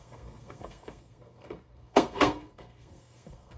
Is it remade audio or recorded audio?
remade